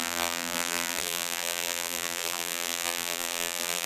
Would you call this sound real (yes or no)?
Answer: no